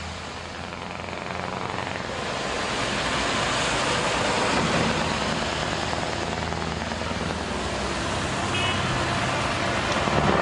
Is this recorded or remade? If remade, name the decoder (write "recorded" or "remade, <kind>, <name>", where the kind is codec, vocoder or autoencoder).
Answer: recorded